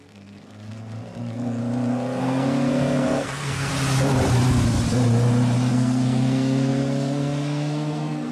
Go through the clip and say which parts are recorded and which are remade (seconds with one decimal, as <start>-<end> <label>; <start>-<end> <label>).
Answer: 0.0-1.6 remade; 1.6-2.2 recorded; 2.2-3.7 remade; 3.7-5.7 recorded; 5.7-8.3 remade